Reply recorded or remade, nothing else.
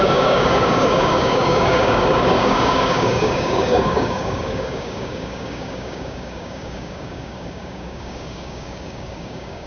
remade